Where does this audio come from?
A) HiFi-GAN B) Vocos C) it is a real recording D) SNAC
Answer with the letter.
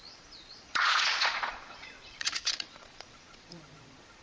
B